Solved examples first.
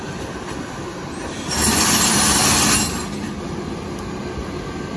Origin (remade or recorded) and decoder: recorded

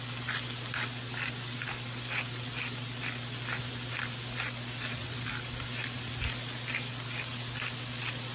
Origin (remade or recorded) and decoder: recorded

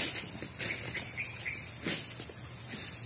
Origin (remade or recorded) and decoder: recorded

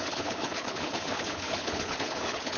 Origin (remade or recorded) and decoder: remade, codec, HILCodec